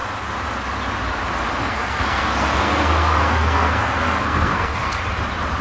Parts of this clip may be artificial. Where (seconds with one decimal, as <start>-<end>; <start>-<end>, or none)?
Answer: 1.6-5.0